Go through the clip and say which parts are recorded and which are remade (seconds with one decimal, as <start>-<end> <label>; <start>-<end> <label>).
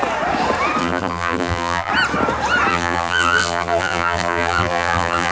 0.0-0.8 recorded; 0.8-1.9 remade; 1.9-2.7 recorded; 2.7-5.3 remade